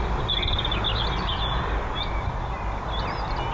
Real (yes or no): yes